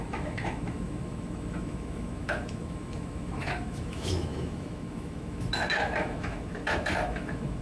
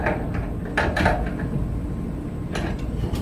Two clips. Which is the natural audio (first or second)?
second